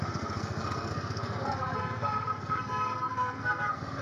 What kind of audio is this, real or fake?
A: fake